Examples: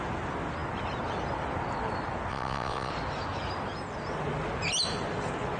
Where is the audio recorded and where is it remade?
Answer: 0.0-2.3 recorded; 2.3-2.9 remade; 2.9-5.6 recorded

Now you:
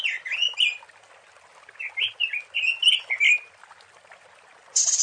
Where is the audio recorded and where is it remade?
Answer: 0.0-5.0 recorded

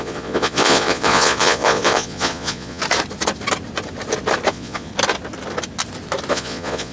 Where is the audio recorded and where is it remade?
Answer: 0.0-2.8 remade; 2.8-4.5 recorded; 4.5-4.9 remade; 4.9-6.3 recorded; 6.3-6.9 remade